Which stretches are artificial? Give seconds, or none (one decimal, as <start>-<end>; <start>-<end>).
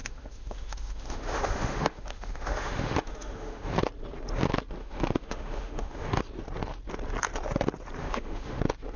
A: 0.0-3.7; 4.8-6.2; 8.0-8.6